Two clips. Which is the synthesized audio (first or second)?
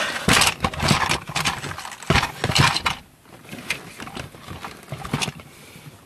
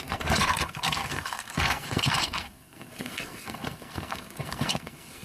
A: second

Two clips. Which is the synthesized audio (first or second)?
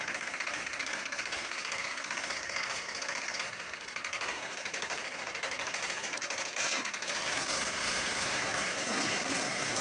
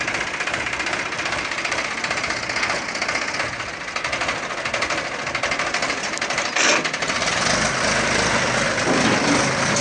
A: first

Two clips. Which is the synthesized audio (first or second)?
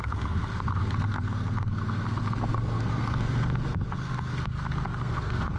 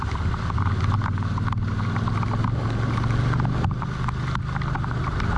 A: first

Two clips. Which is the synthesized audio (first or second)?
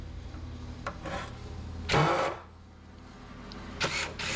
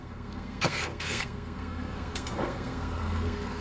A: second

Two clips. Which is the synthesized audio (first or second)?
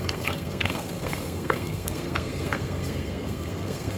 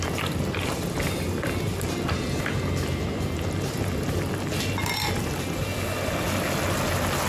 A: first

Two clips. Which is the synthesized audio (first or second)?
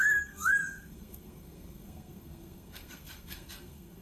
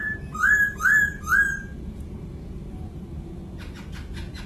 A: first